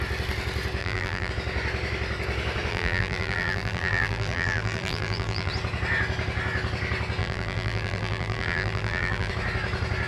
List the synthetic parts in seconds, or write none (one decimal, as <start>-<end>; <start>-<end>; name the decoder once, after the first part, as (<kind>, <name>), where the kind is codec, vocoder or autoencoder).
0.8-1.3 (vocoder, BigVGAN v2); 2.7-5.5; 7.2-9.3